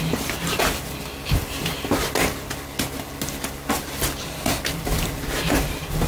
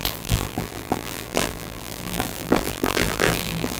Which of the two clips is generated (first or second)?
second